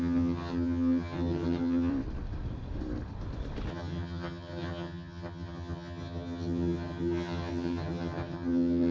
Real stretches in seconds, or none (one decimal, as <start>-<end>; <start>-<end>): 1.9-3.7